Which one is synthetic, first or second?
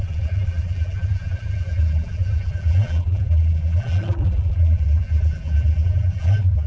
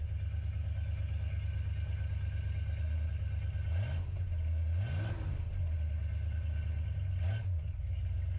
first